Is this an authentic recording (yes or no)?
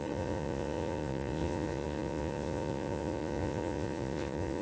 no